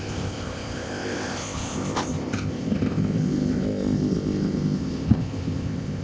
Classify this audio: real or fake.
fake